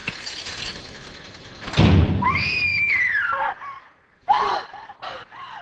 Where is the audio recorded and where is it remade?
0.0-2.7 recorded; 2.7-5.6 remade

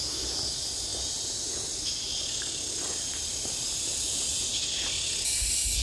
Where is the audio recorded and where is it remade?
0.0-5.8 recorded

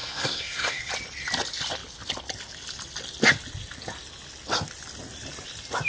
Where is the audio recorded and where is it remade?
0.0-0.9 remade; 0.9-5.9 recorded

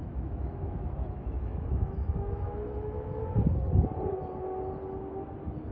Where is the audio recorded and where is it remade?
0.0-3.2 remade; 3.2-5.7 recorded

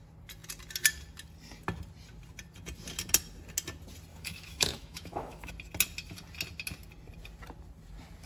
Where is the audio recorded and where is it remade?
0.0-4.1 recorded; 4.1-5.5 remade; 5.5-8.3 recorded

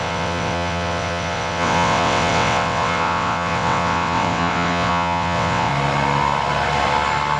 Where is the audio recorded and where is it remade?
0.0-5.7 remade; 5.7-7.4 recorded